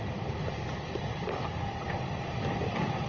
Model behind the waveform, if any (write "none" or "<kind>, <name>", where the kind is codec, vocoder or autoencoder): none